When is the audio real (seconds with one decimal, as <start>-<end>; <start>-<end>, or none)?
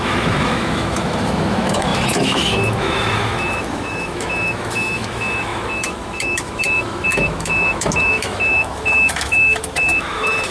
none